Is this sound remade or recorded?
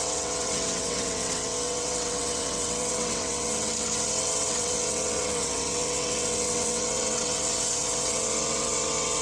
remade